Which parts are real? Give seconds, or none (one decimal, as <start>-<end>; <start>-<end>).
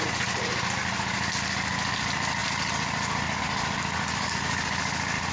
0.0-5.3